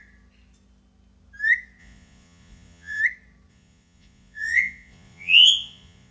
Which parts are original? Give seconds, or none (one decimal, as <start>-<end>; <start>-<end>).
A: 0.0-1.8; 3.0-3.5